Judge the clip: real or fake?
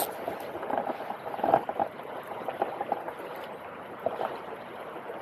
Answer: real